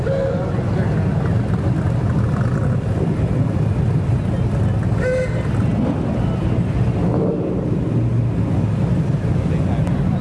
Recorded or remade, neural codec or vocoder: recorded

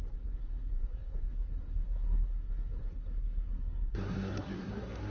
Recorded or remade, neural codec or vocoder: remade, codec, SNAC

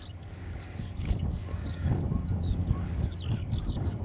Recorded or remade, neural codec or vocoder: remade, codec, DAC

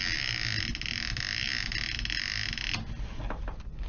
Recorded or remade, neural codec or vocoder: recorded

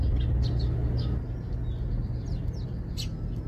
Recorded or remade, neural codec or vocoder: recorded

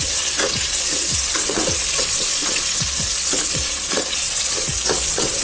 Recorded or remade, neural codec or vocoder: remade, vocoder, WaveNeXt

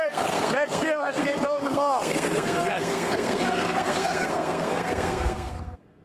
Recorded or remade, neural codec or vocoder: remade, codec, SNAC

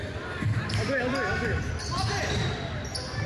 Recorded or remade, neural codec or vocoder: recorded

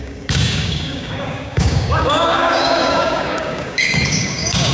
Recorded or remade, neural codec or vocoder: remade, codec, DAC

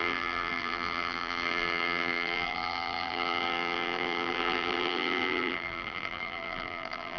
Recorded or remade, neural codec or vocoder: remade, vocoder, BigVGAN v2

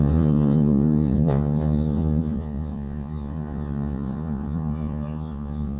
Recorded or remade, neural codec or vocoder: remade, vocoder, Vocos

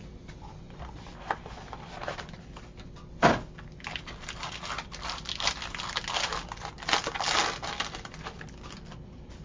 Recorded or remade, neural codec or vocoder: recorded